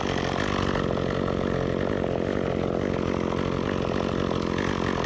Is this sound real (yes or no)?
yes